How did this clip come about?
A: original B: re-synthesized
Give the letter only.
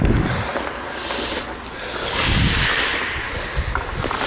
A